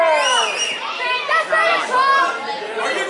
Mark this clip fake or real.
real